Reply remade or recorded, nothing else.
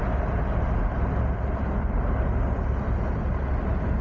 recorded